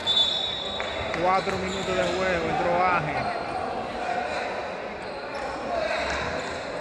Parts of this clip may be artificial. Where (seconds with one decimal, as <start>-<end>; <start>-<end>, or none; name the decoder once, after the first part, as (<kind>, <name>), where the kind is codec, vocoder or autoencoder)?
none